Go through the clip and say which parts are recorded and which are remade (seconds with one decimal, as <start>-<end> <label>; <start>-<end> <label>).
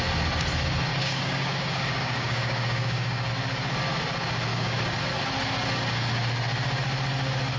0.0-0.9 recorded; 0.9-3.3 remade; 3.3-4.5 recorded; 4.5-5.0 remade; 5.0-7.6 recorded